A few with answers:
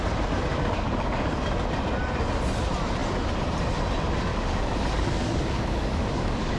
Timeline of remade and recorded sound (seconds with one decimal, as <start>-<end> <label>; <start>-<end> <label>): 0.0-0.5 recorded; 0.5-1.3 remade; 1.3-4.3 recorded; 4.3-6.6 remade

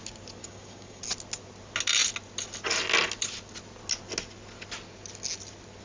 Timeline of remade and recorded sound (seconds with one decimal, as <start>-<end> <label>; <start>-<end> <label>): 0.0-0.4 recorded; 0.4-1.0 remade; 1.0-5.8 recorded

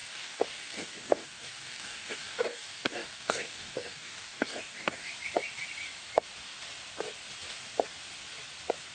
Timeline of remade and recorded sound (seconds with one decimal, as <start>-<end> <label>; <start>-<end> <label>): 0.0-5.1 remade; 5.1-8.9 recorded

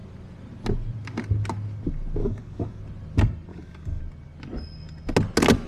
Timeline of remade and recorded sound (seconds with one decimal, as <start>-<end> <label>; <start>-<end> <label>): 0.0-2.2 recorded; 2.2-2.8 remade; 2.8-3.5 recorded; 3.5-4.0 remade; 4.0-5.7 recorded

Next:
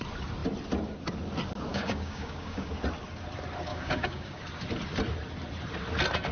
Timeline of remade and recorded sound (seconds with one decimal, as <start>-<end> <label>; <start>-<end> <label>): 0.0-1.7 recorded; 1.7-2.7 remade; 2.7-3.7 recorded; 3.7-4.4 remade; 4.4-6.3 recorded

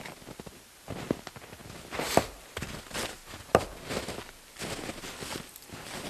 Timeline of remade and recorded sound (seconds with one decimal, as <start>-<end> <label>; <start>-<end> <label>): 0.0-6.1 recorded